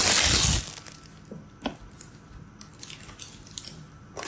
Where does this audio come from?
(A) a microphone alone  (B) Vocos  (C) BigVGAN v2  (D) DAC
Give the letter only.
A